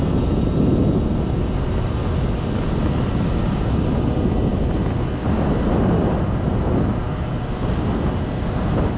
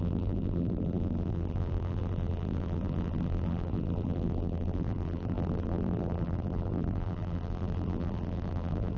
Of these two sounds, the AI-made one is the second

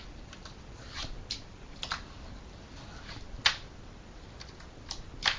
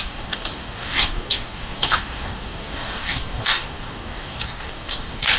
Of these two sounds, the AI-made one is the second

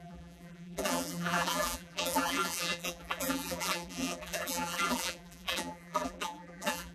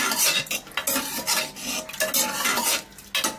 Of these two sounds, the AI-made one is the first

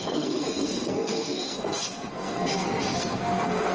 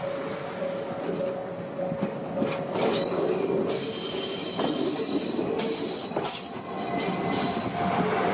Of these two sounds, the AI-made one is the first